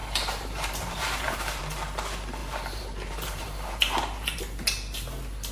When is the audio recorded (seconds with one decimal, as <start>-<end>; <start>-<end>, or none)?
1.6-2.4; 4.4-5.5